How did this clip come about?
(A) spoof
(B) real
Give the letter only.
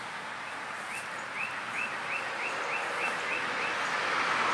B